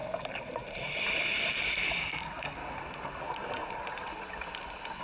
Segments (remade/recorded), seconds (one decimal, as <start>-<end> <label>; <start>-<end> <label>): 0.0-1.3 recorded; 1.3-2.6 remade; 2.6-5.0 recorded